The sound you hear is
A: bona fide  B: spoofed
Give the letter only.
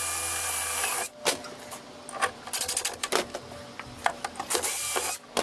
A